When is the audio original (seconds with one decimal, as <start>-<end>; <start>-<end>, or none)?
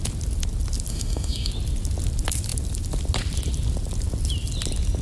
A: 0.0-0.9; 1.5-5.0